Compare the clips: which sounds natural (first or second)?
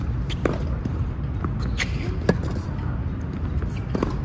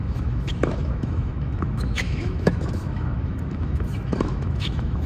first